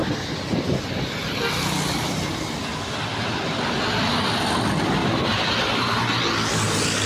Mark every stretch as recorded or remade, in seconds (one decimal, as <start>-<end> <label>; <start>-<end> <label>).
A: 0.0-5.0 recorded; 5.0-6.2 remade; 6.2-7.1 recorded